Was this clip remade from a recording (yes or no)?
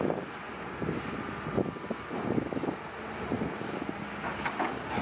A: no